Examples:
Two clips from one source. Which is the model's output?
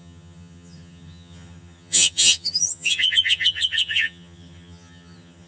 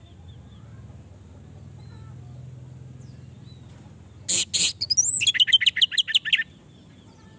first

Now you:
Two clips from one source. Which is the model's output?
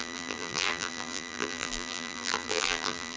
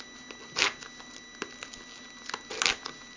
first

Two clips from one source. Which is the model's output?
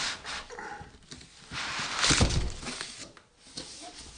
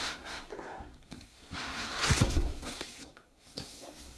second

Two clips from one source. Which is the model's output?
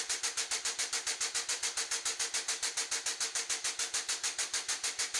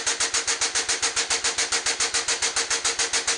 first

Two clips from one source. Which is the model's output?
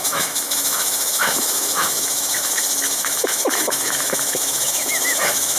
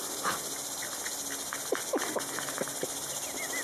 first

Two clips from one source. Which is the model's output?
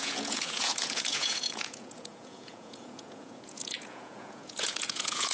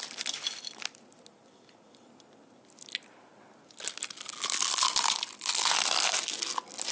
first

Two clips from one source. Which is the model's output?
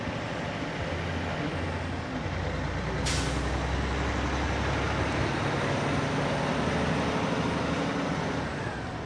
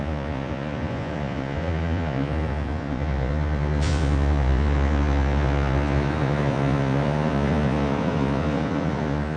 second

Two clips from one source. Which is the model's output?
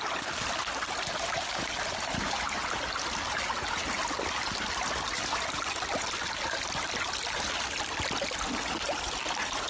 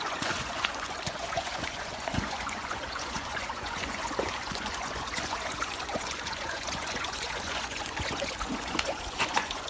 second